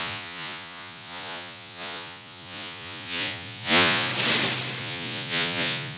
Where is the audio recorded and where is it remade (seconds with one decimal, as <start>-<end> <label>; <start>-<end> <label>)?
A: 0.0-4.1 remade; 4.1-4.8 recorded; 4.8-6.0 remade